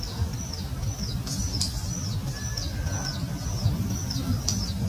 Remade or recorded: recorded